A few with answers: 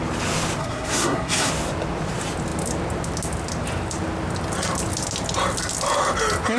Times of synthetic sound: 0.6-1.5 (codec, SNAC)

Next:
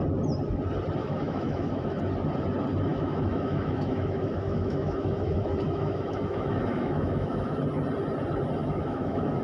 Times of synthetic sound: 1.0-2.0 (autoencoder, DAC-VAE); 2.9-7.6; 8.6-9.4

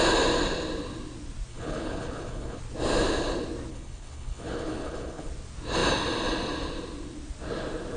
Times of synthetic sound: 1.5-2.6 (codec, HILCodec); 3.7-5.3